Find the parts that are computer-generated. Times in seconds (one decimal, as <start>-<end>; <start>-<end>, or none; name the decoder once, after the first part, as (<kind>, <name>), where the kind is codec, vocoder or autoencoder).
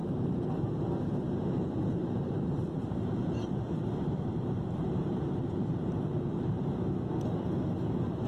0.0-0.6 (vocoder, BigVGAN v2); 1.9-6.6